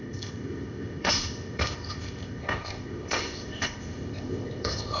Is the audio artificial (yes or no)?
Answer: yes